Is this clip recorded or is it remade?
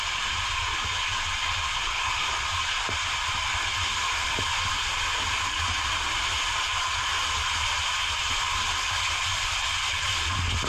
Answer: recorded